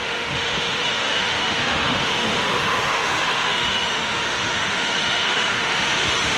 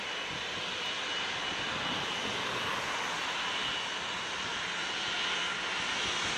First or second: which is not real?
first